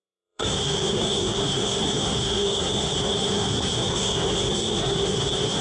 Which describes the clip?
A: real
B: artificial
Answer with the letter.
B